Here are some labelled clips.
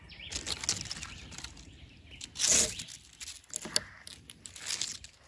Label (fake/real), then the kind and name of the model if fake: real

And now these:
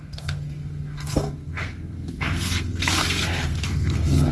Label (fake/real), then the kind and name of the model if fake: fake, codec, SNAC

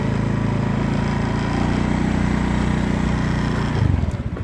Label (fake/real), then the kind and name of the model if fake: real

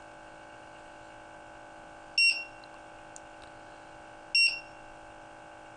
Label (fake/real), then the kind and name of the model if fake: real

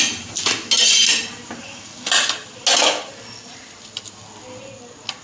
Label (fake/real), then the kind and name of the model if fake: real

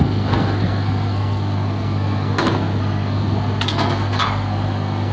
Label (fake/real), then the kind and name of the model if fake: fake, codec, SNAC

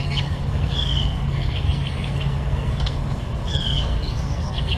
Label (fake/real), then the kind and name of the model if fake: fake, codec, SNAC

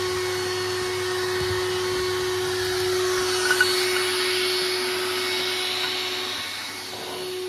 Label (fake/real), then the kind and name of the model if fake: real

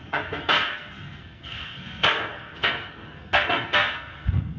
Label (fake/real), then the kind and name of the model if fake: fake, codec, SNAC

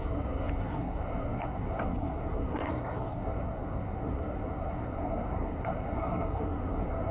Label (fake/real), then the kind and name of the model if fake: fake, codec, SNAC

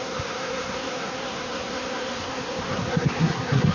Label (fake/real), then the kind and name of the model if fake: fake, codec, SNAC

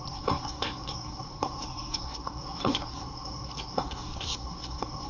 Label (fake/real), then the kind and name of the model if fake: fake, codec, SNAC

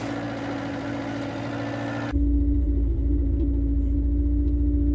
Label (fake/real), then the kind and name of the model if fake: real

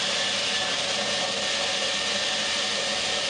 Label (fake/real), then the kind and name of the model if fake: real